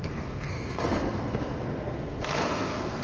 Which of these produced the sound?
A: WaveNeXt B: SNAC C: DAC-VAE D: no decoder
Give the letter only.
B